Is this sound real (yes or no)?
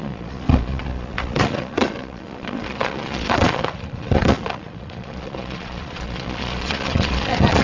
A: no